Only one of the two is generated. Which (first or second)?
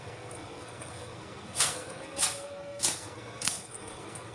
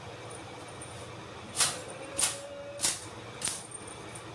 first